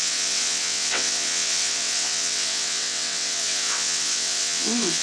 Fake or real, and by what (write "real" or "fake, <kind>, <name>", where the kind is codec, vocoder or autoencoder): fake, vocoder, WaveNeXt